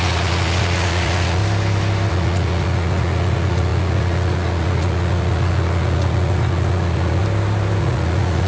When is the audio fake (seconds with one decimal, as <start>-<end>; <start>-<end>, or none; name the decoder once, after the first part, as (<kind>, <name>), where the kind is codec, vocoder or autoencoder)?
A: 0.0-1.4 (vocoder, Vocos); 2.1-7.2; 7.8-8.5